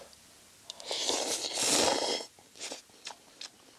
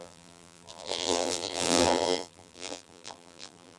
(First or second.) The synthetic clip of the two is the second